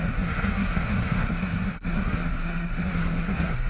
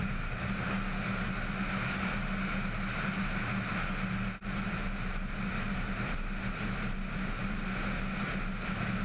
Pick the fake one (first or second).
first